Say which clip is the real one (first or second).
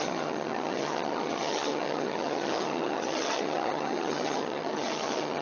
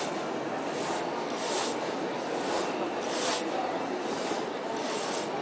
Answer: second